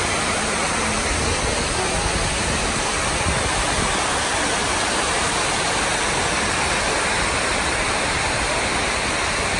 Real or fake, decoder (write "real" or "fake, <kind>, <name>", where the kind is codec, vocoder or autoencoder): real